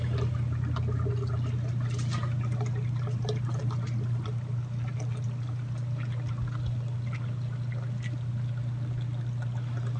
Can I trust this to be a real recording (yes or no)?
yes